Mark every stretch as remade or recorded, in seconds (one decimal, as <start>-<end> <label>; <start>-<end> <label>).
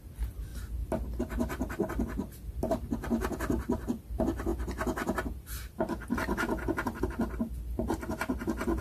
0.0-8.8 recorded